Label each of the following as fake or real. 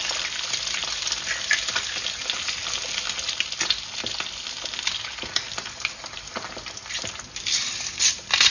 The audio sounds real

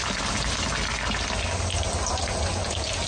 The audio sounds real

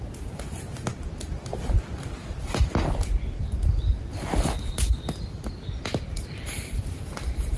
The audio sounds real